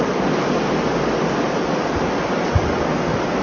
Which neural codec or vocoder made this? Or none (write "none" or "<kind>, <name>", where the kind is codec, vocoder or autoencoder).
none